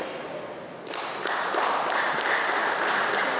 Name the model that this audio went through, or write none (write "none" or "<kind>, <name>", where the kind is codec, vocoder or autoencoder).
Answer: none